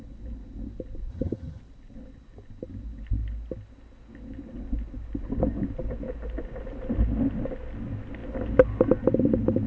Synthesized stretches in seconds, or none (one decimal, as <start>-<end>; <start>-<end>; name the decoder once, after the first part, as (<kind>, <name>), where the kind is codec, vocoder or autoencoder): 1.1-1.6 (vocoder, HiFi-GAN)